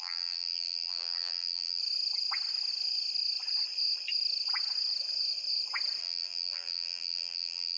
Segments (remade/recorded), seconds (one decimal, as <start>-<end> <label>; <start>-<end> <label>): 0.0-1.8 remade; 1.8-6.0 recorded; 6.0-7.8 remade